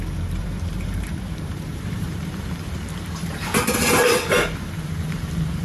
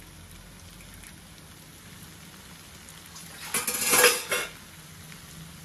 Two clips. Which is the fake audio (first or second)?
first